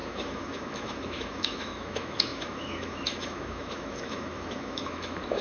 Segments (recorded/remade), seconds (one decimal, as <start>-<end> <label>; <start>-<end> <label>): 0.0-5.4 remade